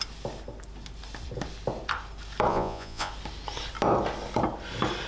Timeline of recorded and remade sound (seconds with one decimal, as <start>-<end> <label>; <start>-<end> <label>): 0.0-2.5 recorded; 2.5-3.1 remade; 3.1-5.1 recorded